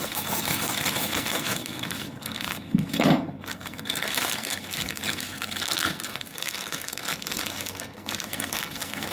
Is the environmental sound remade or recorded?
remade